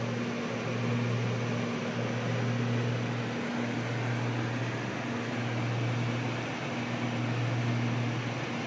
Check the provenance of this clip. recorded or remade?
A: recorded